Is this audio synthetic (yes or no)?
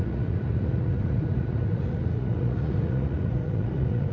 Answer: yes